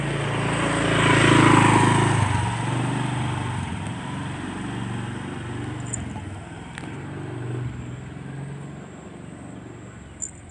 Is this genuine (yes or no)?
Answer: yes